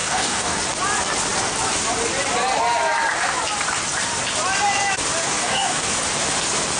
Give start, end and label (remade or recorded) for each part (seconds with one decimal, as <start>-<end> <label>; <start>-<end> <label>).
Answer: 0.0-0.6 remade; 0.6-5.2 recorded; 5.2-5.9 remade; 5.9-6.8 recorded